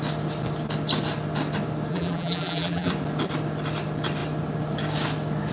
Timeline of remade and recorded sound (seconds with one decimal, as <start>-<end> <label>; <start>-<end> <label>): 0.0-1.9 recorded; 1.9-2.9 remade; 2.9-5.5 recorded